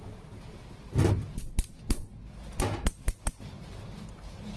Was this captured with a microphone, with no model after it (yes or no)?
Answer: yes